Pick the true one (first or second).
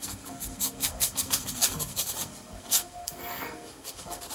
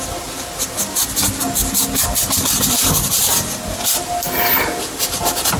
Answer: second